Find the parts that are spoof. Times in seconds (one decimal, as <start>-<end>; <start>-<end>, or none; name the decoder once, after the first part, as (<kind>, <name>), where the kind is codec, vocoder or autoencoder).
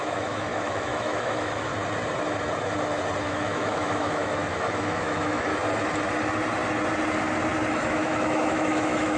0.0-1.7 (autoencoder, DAC-VAE); 3.2-5.5; 7.7-9.2